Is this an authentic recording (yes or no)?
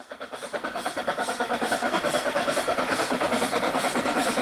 no